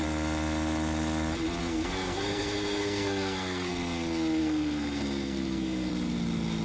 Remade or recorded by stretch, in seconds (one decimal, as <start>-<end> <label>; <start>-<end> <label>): 0.0-1.6 recorded; 1.6-3.7 remade; 3.7-4.4 recorded; 4.4-5.9 remade; 5.9-6.6 recorded